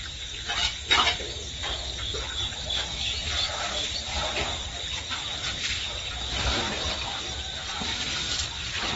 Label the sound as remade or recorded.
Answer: recorded